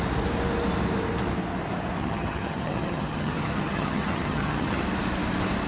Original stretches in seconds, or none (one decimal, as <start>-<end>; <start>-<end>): 0.0-2.0; 4.8-5.7